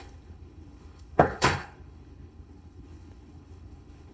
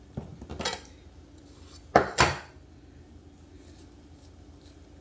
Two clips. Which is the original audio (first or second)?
second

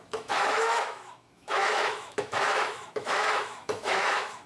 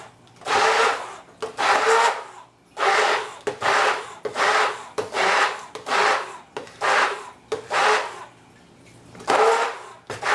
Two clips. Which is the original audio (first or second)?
second